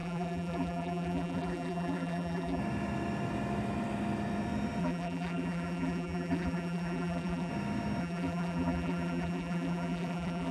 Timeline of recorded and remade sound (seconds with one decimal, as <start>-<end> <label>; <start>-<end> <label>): 0.0-2.6 remade; 2.6-4.8 recorded; 4.8-7.5 remade; 7.5-8.0 recorded; 8.0-10.5 remade

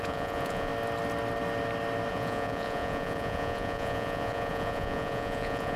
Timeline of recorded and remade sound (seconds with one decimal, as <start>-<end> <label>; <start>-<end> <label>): 0.0-0.7 remade; 0.7-2.1 recorded; 2.1-5.8 remade